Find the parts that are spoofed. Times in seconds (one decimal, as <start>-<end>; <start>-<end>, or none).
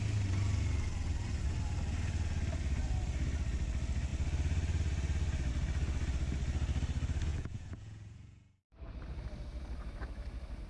7.3-8.6